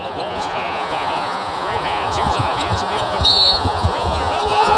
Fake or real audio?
fake